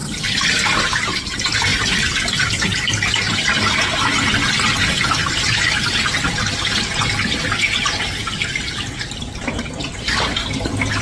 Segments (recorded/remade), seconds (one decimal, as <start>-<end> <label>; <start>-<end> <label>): 0.0-1.7 recorded; 1.7-3.3 remade; 3.3-5.2 recorded; 5.2-10.2 remade; 10.2-11.0 recorded